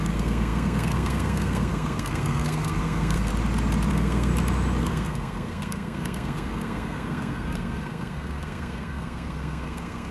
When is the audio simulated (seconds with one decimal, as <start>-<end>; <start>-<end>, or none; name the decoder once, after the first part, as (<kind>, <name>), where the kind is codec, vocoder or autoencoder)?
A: 0.0-3.3 (codec, SNAC); 3.9-4.3; 4.8-10.1